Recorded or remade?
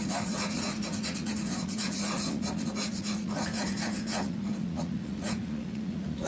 remade